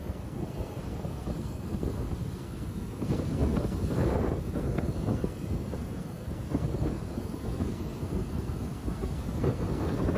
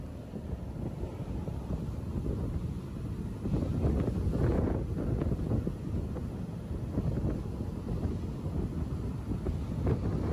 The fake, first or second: first